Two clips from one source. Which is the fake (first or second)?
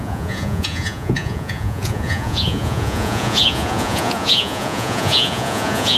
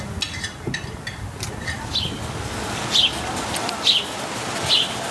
first